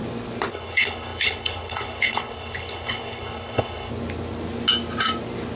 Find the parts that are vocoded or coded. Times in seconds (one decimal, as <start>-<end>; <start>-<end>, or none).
0.5-3.9